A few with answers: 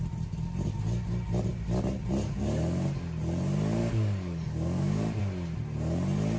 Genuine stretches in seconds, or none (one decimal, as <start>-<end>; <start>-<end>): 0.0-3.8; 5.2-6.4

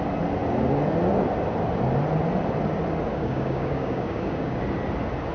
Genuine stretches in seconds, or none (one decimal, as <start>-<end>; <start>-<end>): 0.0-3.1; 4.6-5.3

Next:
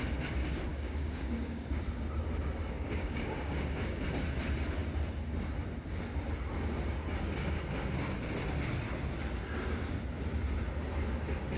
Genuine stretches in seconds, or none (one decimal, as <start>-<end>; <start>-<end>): 0.0-0.7; 1.7-2.6; 4.0-11.6

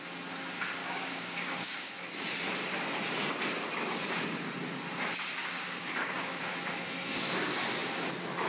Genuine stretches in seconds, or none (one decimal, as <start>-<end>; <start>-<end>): 0.0-0.8; 1.9-5.4; 6.3-8.5

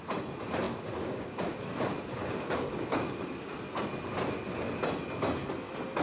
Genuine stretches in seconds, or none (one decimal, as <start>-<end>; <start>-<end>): 0.0-0.7; 1.8-2.2; 3.5-6.0

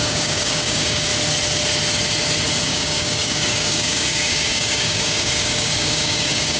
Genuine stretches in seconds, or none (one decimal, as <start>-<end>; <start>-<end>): 1.1-2.6